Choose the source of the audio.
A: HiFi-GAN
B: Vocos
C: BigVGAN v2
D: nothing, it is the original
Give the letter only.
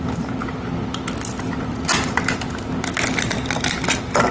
D